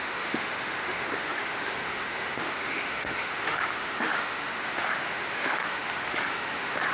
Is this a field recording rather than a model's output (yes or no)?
no